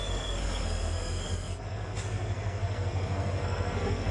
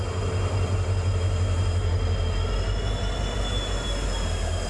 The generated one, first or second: first